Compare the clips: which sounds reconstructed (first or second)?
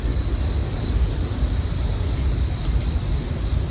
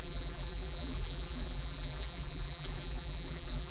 second